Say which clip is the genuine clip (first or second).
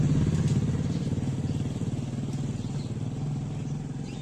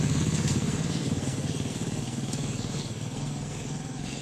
first